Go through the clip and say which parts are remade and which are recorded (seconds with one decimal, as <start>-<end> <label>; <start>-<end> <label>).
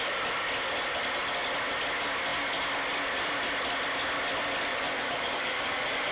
0.0-4.7 recorded; 4.7-6.1 remade